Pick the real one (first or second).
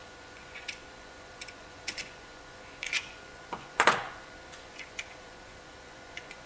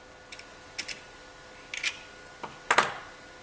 second